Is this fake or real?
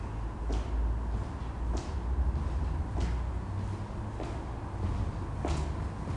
real